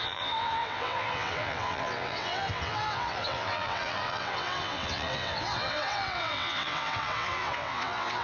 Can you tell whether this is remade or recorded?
remade